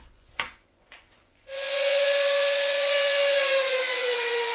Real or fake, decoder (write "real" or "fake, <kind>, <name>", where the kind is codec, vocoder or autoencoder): fake, vocoder, Vocos